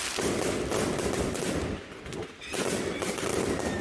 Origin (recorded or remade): recorded